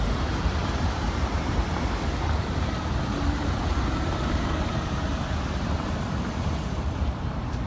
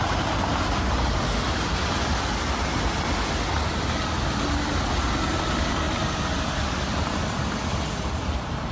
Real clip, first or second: second